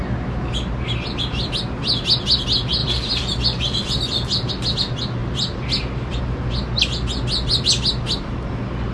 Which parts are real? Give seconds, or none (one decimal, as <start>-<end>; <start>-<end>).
0.0-2.8; 4.5-5.2; 6.2-8.9

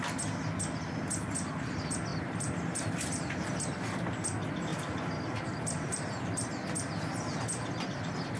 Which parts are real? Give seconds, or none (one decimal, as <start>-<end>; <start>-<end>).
0.0-2.1; 4.1-4.7; 6.5-8.4